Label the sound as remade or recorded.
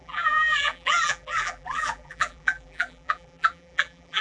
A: remade